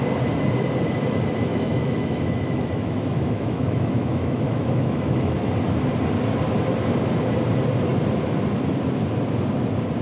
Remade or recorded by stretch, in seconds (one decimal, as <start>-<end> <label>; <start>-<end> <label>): 0.0-1.5 recorded; 1.5-5.5 remade; 5.5-10.0 recorded